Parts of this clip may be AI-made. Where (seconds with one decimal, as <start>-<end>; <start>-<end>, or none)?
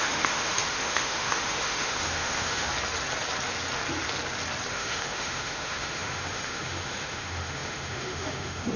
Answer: 0.0-2.7; 4.7-8.8